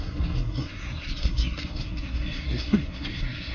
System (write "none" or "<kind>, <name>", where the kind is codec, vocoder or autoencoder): codec, SNAC